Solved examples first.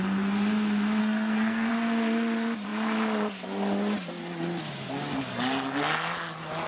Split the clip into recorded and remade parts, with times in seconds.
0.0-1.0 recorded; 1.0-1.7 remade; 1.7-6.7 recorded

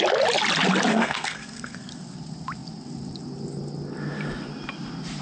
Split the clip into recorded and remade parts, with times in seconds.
0.0-0.9 recorded; 0.9-1.9 remade; 1.9-5.2 recorded

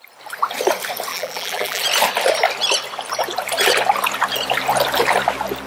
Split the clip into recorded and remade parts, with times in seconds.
0.0-1.1 recorded; 1.1-1.8 remade; 1.8-5.7 recorded

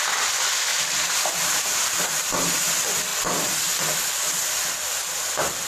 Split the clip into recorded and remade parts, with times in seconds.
0.0-0.7 recorded; 0.7-2.3 remade; 2.3-5.7 recorded

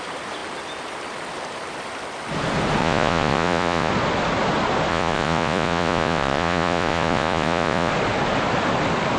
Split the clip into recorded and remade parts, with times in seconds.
0.0-2.8 recorded; 2.8-3.9 remade; 3.9-4.9 recorded; 4.9-7.9 remade; 7.9-9.2 recorded

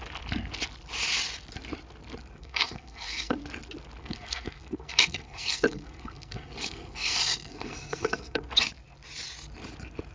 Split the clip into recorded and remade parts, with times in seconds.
0.0-2.4 recorded; 2.4-3.4 remade; 3.4-4.0 recorded; 4.0-8.4 remade; 8.4-10.1 recorded

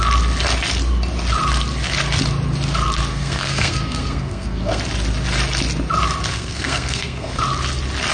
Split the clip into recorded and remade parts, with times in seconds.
0.0-3.1 recorded; 3.1-4.8 remade; 4.8-6.3 recorded; 6.3-7.4 remade; 7.4-8.1 recorded

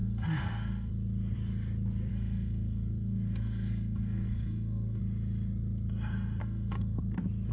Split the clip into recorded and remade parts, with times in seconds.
0.0-0.9 remade; 0.9-2.1 recorded; 2.1-5.0 remade; 5.0-6.4 recorded; 6.4-7.0 remade; 7.0-7.5 recorded